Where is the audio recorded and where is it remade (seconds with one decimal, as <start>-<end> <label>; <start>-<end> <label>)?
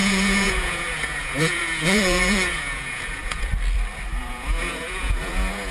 0.0-3.5 remade; 3.5-4.2 recorded; 4.2-5.7 remade